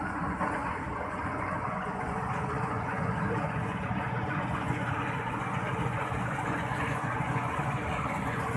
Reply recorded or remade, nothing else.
remade